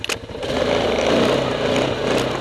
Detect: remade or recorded recorded